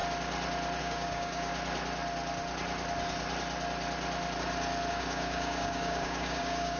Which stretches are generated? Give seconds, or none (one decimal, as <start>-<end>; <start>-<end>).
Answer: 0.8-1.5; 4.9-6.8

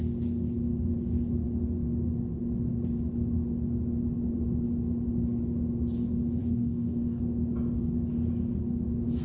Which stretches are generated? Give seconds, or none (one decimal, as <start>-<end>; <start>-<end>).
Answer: 6.4-7.2

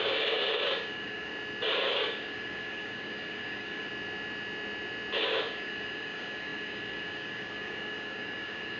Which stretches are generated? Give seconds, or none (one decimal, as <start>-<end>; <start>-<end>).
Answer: 0.0-1.3; 1.9-3.9; 5.2-8.8

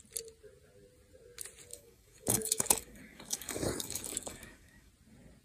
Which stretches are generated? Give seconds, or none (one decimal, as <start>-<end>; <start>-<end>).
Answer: 1.7-4.9

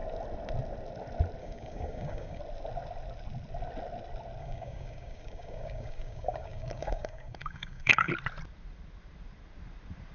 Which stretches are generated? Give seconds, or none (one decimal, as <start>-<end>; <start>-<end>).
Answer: 1.4-2.4; 4.4-8.1